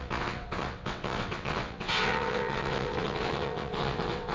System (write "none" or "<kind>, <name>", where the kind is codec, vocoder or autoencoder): vocoder, WaveNeXt